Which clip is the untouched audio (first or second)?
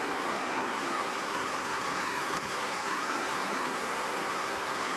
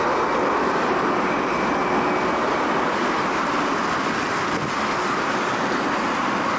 second